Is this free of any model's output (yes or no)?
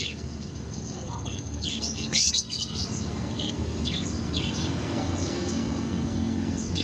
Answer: no